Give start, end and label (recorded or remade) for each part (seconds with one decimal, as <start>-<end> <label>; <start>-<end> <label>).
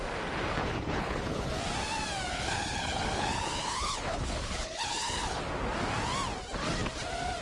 0.0-0.6 recorded; 0.6-1.5 remade; 1.5-2.3 recorded; 2.3-5.4 remade; 5.4-7.4 recorded